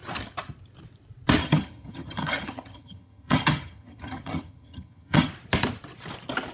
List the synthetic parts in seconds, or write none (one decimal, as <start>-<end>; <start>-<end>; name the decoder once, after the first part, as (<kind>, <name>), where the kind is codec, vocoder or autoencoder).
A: 1.4-5.3 (vocoder, HiFi-GAN)